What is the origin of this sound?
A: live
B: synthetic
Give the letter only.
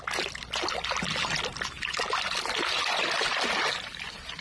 A